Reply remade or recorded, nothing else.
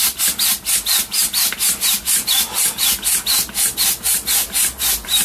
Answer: recorded